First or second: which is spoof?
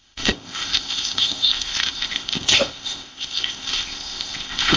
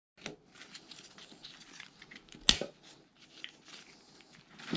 first